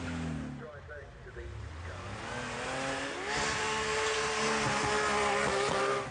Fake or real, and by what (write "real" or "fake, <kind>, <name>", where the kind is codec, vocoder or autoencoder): real